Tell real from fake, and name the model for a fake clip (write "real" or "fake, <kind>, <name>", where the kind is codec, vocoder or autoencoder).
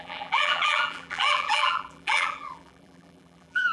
fake, vocoder, BigVGAN v2